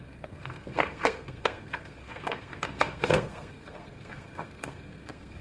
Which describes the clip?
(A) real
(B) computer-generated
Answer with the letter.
B